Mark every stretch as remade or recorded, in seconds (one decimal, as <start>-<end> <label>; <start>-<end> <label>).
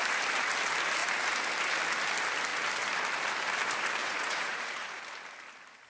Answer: 0.0-4.0 recorded; 4.0-5.0 remade; 5.0-5.9 recorded